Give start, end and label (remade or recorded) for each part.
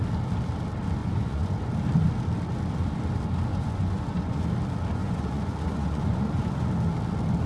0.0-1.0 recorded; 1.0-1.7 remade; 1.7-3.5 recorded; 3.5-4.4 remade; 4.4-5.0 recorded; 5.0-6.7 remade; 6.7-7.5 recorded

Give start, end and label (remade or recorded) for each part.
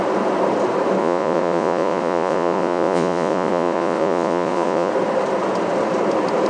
0.0-1.0 recorded; 1.0-4.9 remade; 4.9-6.5 recorded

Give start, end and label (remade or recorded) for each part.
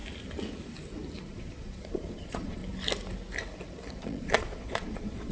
0.0-1.2 recorded; 1.2-2.6 remade; 2.6-3.9 recorded; 3.9-5.3 remade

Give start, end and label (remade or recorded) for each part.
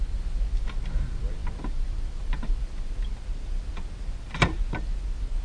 0.0-5.4 recorded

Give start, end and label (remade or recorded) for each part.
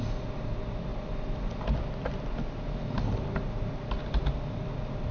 0.0-5.1 recorded